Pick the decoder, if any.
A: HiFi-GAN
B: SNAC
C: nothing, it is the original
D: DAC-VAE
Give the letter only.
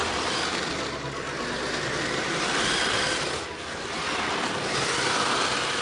C